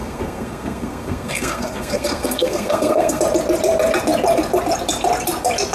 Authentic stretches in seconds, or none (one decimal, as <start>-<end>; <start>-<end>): 3.2-5.7